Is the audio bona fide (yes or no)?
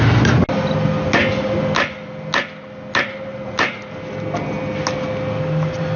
yes